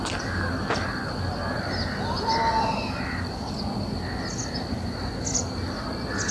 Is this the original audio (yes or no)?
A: yes